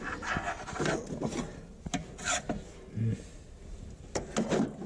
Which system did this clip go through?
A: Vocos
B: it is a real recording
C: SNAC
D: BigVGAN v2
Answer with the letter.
B